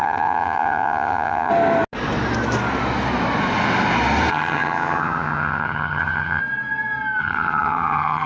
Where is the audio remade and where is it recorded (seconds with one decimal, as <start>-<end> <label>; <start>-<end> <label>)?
0.0-1.5 remade; 1.5-4.3 recorded; 4.3-6.4 remade; 6.4-7.2 recorded; 7.2-8.3 remade